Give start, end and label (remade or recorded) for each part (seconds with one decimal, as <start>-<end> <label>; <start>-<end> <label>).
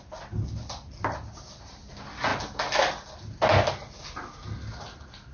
0.0-5.3 recorded